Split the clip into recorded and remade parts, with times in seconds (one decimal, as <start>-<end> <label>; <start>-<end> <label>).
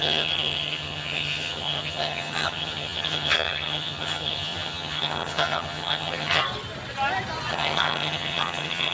0.0-6.4 remade; 6.4-7.5 recorded; 7.5-8.9 remade